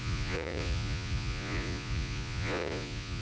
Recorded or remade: remade